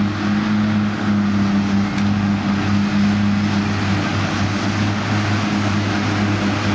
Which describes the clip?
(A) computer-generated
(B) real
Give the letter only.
B